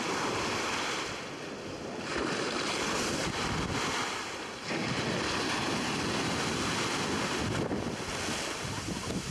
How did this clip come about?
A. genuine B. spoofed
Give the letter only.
A